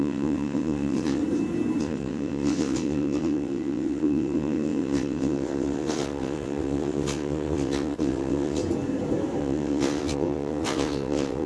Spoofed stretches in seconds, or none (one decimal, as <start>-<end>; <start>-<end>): 0.0-1.2; 1.8-8.6; 9.4-11.5